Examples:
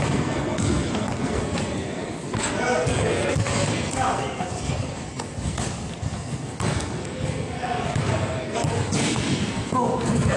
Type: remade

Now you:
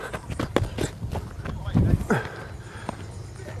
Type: recorded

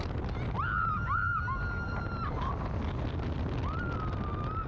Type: recorded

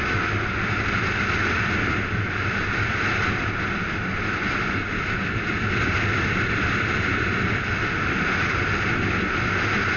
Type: recorded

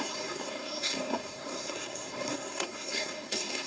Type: remade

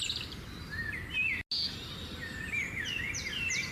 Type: recorded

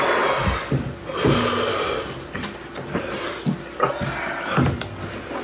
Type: recorded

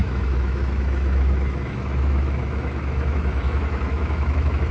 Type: remade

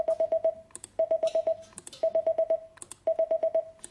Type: recorded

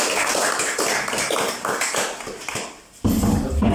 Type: remade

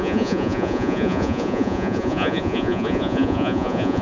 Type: remade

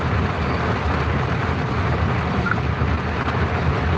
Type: recorded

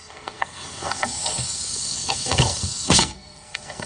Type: remade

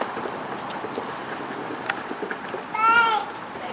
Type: remade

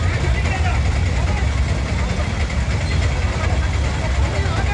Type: recorded